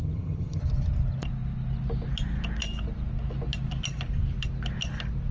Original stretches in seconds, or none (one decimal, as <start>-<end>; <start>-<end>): 0.6-5.3